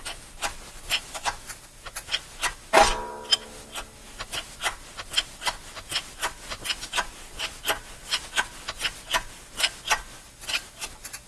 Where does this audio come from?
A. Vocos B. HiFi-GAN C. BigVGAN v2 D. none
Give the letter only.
D